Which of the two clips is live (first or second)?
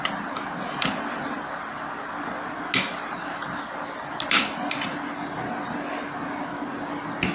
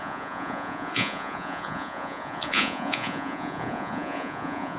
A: first